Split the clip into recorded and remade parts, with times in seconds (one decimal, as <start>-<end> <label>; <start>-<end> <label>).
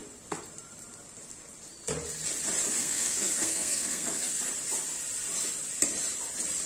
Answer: 0.0-2.8 recorded; 2.8-4.4 remade; 4.4-6.7 recorded